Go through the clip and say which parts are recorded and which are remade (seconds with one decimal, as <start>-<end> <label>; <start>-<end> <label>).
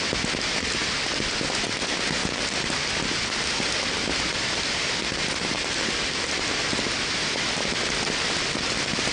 0.0-9.1 recorded